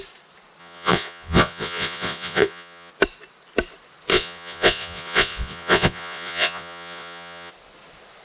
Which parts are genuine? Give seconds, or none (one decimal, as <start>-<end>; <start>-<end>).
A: 0.0-0.6; 2.9-4.1; 7.5-8.2